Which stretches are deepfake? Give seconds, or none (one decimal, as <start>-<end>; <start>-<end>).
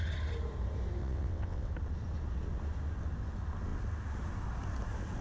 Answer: 1.0-1.7